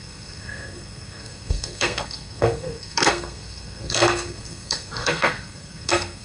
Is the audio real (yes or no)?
no